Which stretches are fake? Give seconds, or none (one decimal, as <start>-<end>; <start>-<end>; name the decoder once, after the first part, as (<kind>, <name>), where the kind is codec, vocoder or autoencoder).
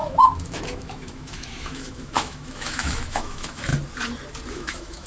0.0-3.7 (autoencoder, DAC-VAE); 4.5-5.1